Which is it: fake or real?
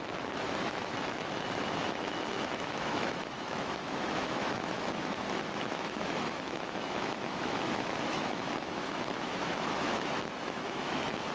fake